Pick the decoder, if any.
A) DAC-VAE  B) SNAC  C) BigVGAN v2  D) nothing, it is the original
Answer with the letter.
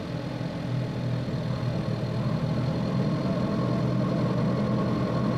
D